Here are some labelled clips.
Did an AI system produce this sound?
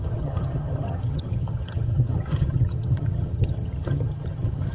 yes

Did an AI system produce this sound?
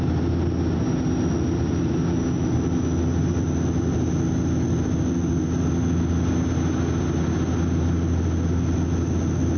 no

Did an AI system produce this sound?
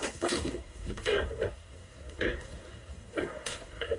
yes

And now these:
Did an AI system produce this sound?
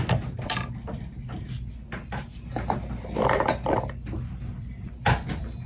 no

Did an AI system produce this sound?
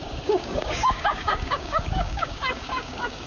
yes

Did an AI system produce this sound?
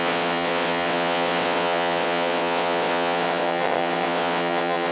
yes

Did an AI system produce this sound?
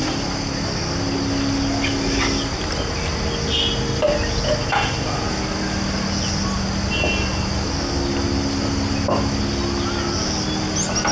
no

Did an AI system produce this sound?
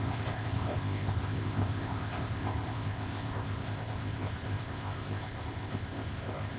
yes